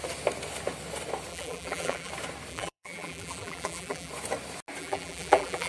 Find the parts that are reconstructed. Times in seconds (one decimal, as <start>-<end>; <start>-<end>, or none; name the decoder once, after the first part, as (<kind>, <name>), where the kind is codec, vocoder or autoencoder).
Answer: 1.3-2.1 (vocoder, BigVGAN v2); 2.5-4.1; 4.8-5.7